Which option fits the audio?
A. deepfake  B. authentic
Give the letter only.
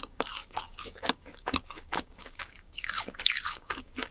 A